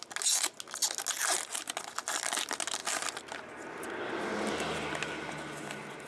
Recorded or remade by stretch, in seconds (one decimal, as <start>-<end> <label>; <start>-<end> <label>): 0.0-6.1 recorded